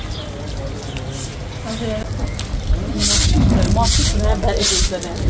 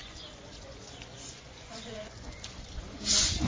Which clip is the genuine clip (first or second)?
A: first